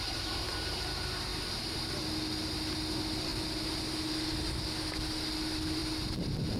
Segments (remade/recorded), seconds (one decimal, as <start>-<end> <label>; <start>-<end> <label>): 0.0-0.7 remade; 0.7-6.6 recorded